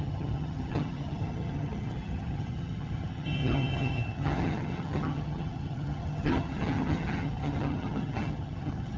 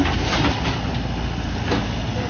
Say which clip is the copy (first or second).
first